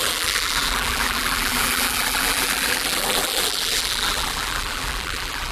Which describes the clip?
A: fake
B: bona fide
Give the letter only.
A